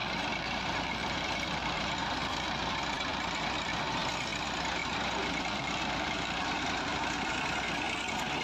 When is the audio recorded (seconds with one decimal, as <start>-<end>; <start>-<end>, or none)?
2.7-3.1; 3.8-4.8; 7.3-8.4